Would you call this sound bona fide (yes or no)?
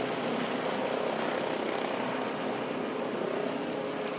yes